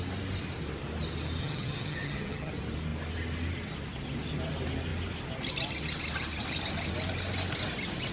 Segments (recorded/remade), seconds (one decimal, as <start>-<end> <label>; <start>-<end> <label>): 0.0-1.4 recorded; 1.4-2.5 remade; 2.5-8.1 recorded